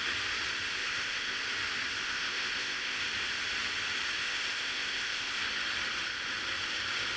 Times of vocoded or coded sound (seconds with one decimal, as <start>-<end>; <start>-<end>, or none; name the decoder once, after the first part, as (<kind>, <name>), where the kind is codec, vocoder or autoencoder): 0.8-1.4 (codec, ZipCodec); 2.0-3.0; 4.2-5.4